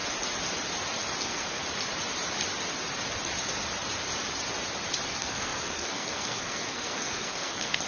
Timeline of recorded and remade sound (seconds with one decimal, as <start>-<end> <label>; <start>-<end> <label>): 0.0-1.2 recorded; 1.2-1.6 remade; 1.6-5.1 recorded; 5.1-7.9 remade